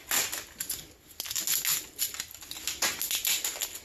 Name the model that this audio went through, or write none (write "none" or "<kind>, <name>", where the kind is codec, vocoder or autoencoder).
none